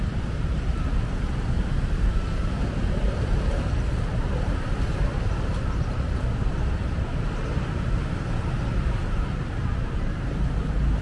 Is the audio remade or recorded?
remade